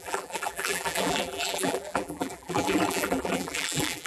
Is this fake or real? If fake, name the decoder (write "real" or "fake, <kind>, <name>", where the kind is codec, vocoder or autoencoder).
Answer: fake, vocoder, BigVGAN v2